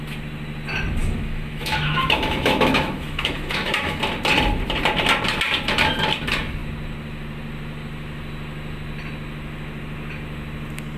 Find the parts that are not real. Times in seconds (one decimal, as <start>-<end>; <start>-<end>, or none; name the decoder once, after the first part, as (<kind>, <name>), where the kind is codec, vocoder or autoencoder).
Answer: 1.0-4.0 (autoencoder, DAC-VAE)